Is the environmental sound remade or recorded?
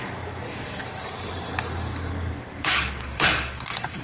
remade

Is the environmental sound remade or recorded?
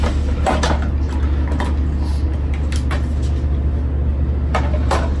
recorded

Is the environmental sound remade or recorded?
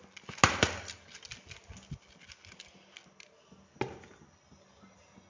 recorded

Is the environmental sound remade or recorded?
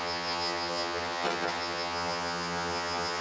remade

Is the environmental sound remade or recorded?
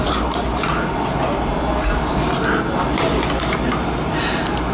recorded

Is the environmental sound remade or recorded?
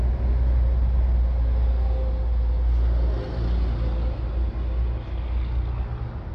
recorded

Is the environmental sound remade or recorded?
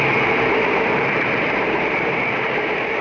recorded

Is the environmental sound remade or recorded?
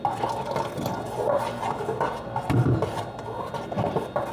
recorded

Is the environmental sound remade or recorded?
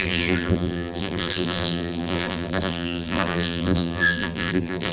remade